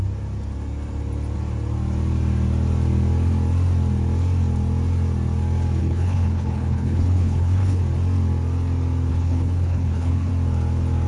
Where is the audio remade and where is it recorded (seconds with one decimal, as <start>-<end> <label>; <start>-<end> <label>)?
0.0-5.8 recorded; 5.8-7.8 remade; 7.8-9.1 recorded; 9.1-10.3 remade; 10.3-11.1 recorded